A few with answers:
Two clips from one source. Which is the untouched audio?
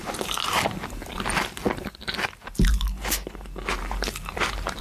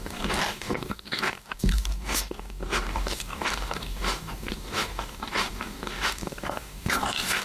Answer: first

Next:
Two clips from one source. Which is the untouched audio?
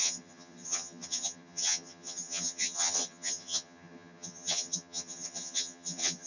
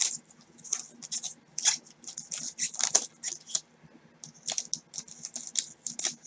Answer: second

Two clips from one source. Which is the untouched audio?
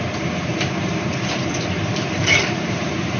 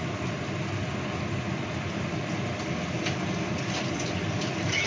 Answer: second